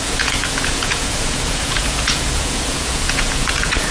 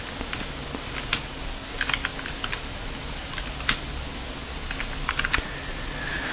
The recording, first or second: second